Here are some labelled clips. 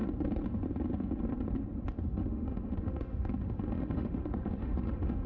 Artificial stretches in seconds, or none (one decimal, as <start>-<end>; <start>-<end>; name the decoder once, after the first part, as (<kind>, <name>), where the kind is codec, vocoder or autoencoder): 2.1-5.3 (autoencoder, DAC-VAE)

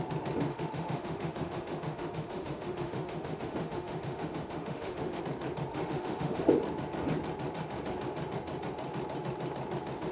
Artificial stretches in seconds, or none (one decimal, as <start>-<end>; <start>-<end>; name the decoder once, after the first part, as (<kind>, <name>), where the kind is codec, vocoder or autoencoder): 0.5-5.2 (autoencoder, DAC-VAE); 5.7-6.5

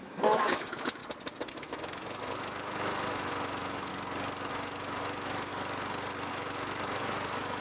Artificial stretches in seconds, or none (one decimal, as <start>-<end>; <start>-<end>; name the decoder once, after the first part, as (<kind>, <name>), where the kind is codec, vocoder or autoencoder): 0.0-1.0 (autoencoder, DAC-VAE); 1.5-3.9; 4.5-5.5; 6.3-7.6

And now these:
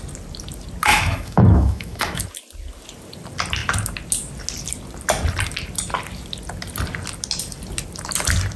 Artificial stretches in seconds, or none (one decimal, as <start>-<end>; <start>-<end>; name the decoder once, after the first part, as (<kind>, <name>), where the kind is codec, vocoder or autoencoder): 0.9-2.2 (autoencoder, DAC-VAE)

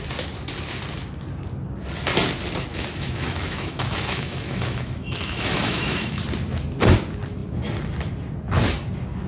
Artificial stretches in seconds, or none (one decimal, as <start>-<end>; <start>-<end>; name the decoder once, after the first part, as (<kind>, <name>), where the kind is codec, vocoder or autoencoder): 2.7-6.2 (autoencoder, DAC-VAE)